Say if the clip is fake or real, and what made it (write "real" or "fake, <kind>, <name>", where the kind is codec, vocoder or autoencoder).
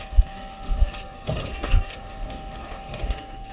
fake, codec, SNAC